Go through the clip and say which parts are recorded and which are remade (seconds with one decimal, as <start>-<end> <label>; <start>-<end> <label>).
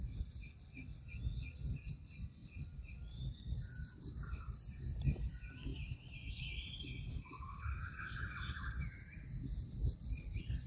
0.0-2.4 recorded; 2.4-3.4 remade; 3.4-5.7 recorded; 5.7-6.3 remade; 6.3-10.7 recorded